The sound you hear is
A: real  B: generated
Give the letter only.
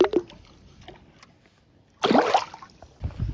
A